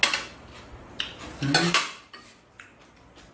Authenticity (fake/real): real